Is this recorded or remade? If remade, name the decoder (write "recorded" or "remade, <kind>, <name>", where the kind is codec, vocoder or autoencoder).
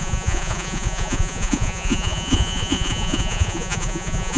remade, vocoder, Vocos